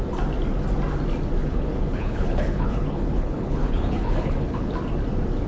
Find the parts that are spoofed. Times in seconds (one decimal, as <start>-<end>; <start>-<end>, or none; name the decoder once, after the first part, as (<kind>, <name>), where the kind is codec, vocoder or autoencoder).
1.4-4.7 (codec, HILCodec)